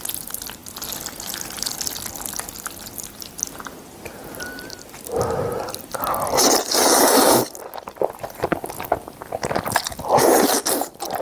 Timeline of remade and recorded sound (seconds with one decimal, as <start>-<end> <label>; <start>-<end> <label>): 0.0-11.2 recorded